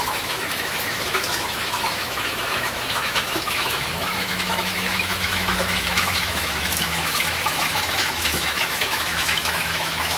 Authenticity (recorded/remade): remade